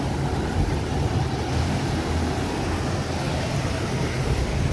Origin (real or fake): real